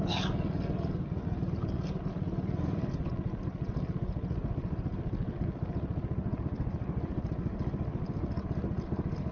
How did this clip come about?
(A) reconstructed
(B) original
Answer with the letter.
B